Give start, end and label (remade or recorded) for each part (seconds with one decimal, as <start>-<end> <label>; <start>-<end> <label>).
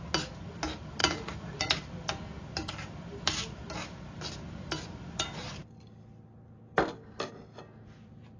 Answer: 0.0-1.0 recorded; 1.0-1.7 remade; 1.7-8.4 recorded